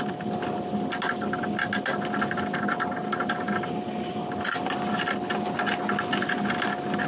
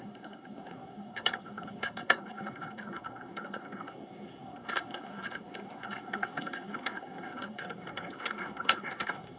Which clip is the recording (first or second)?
first